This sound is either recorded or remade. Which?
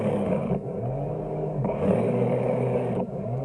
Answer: remade